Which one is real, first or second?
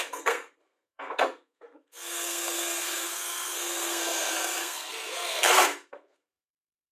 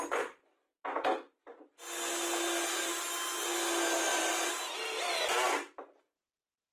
second